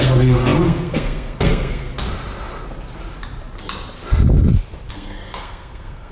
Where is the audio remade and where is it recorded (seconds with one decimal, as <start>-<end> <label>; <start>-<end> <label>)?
0.0-1.9 remade; 1.9-4.9 recorded; 4.9-6.1 remade